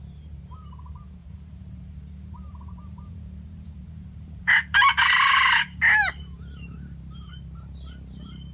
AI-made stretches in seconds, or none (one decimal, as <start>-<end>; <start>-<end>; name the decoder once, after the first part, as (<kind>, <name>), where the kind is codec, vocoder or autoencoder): 1.2-5.8 (vocoder, BigVGAN v2)